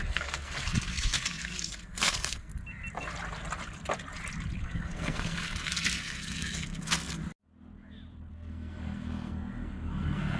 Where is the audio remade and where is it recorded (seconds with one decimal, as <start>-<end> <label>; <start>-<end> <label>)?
0.0-2.5 remade; 2.5-4.6 recorded; 4.6-7.2 remade; 7.2-8.3 recorded; 8.3-10.4 remade